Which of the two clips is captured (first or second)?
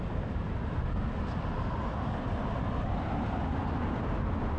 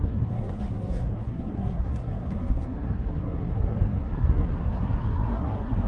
first